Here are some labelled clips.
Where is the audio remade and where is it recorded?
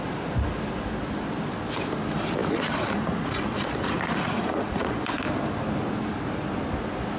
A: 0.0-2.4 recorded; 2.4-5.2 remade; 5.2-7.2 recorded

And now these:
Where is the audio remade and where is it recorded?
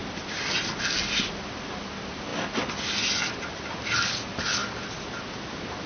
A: 0.0-5.9 recorded